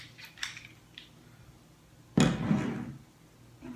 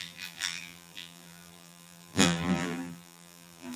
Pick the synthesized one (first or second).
second